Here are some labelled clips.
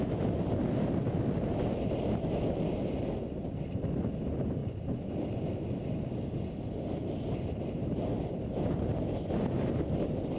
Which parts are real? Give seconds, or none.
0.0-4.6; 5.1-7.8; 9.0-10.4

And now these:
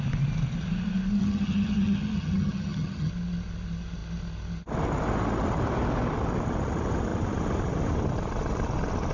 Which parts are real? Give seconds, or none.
0.0-1.2; 3.1-9.1

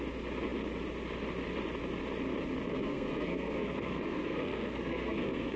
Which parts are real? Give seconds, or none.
0.0-2.7